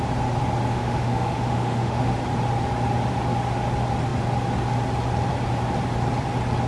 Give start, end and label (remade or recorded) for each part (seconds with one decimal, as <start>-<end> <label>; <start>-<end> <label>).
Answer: 0.0-0.7 recorded; 0.7-2.1 remade; 2.1-6.7 recorded